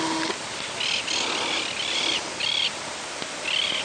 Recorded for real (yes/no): yes